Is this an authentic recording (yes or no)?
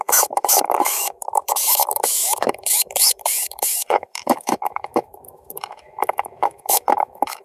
no